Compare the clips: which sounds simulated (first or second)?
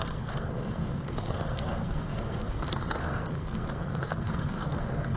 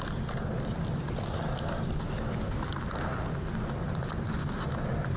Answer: first